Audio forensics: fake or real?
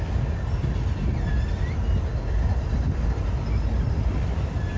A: real